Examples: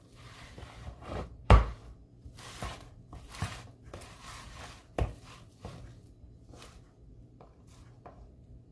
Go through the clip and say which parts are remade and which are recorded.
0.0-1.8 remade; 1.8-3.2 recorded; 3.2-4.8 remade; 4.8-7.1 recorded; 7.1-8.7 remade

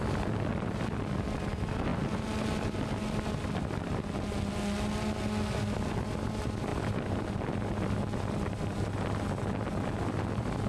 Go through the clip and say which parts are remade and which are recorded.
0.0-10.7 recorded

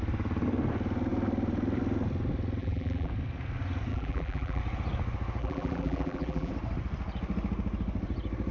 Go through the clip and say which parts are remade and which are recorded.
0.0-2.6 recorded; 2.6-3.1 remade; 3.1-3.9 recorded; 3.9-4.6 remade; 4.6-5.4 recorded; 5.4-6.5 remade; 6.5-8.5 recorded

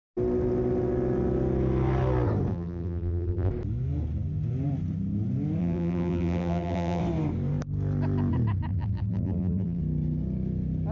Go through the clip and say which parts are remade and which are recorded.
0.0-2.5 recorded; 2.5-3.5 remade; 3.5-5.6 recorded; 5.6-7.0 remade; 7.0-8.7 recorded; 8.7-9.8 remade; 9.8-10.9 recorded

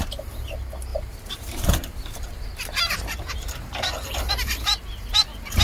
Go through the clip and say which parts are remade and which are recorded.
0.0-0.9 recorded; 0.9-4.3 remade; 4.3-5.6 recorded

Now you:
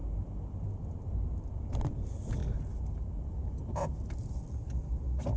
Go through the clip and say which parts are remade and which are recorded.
0.0-0.7 remade; 0.7-5.4 recorded

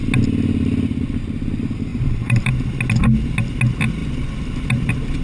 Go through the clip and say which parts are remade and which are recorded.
0.0-1.9 recorded; 1.9-2.5 remade; 2.5-5.2 recorded

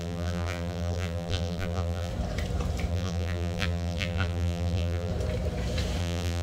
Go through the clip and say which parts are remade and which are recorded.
0.0-2.1 remade; 2.1-2.9 recorded; 2.9-5.1 remade; 5.1-6.0 recorded; 6.0-6.4 remade